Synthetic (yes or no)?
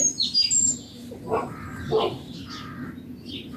no